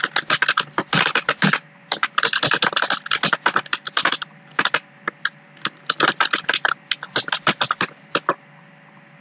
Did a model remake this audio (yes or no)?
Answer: no